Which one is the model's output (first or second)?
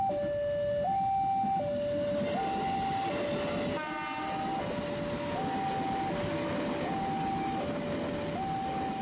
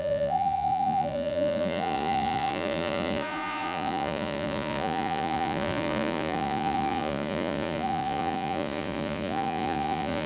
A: second